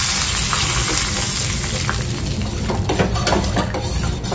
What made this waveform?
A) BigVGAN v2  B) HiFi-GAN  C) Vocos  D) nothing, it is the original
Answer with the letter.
D